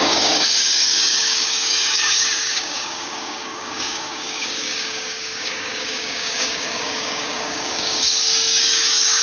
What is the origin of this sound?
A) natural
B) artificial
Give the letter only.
B